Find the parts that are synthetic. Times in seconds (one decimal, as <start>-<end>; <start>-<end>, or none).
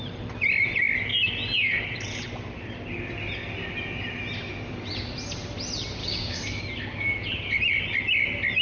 6.0-6.6